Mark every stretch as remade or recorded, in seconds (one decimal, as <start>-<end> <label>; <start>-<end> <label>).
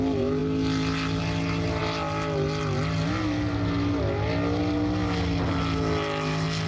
0.0-6.7 recorded